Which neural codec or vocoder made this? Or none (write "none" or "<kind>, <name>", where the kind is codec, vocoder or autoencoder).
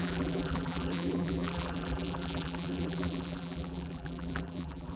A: vocoder, BigVGAN v2